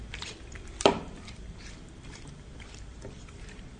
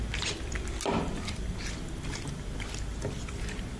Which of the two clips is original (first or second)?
second